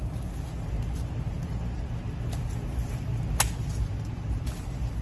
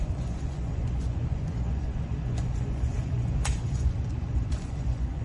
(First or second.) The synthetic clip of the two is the second